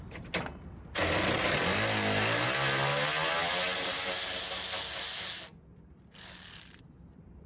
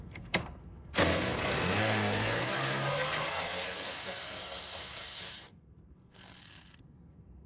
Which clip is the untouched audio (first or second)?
first